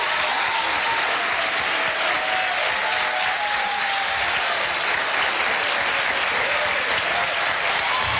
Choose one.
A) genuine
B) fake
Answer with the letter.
A